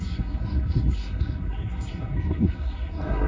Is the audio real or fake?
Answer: fake